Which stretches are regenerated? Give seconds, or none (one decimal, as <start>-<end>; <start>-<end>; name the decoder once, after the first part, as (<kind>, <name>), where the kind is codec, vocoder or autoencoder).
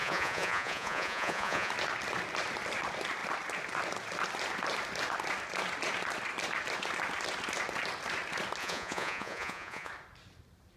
0.0-1.7 (vocoder, Vocos); 8.6-9.9